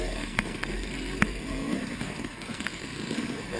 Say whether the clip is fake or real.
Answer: fake